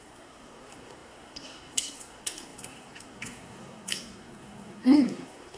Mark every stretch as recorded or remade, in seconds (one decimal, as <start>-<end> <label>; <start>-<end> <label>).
0.0-5.6 remade